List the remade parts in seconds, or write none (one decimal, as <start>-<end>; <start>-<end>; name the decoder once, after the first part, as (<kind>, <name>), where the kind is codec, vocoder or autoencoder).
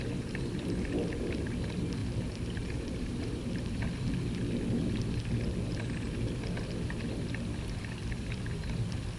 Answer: 2.0-3.8 (vocoder, BigVGAN v2)